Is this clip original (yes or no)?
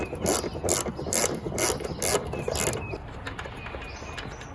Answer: yes